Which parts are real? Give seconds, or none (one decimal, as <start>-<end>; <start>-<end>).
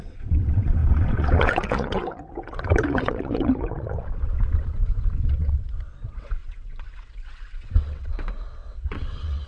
none